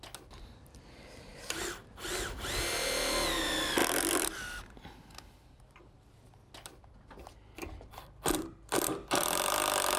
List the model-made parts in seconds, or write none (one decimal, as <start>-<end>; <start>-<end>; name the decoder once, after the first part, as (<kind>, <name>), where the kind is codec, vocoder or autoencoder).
none